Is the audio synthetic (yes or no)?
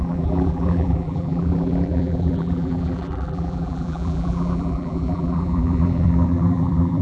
yes